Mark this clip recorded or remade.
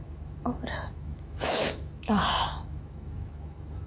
remade